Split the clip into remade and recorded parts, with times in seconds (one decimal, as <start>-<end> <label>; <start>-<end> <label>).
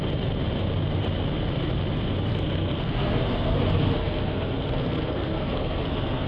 0.0-2.3 recorded; 2.3-6.3 remade